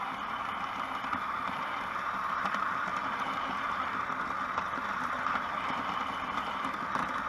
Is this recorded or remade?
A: recorded